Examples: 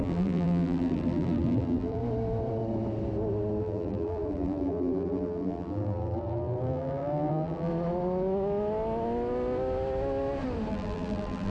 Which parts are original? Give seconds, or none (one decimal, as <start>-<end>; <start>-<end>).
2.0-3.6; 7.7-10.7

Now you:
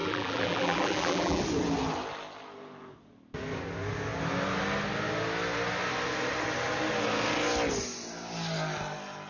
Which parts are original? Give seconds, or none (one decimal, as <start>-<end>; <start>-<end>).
1.4-9.3

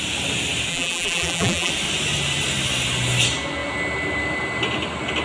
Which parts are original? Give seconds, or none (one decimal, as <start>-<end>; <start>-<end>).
0.0-0.7; 1.7-5.2

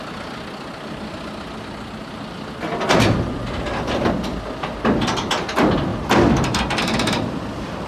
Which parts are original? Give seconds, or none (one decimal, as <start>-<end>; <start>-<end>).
0.0-5.9

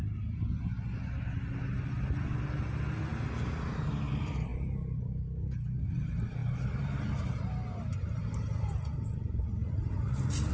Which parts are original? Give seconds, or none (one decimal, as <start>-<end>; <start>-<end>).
0.0-6.4

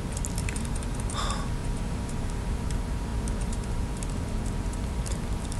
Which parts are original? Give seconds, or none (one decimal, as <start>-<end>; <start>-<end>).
0.0-0.4; 1.1-1.6; 2.7-5.6

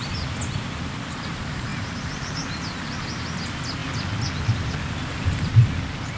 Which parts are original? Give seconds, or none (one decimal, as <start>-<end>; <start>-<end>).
3.8-4.5; 5.5-6.2

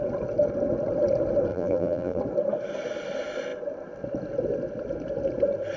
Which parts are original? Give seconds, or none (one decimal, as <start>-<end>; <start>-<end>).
0.0-1.5; 2.2-5.8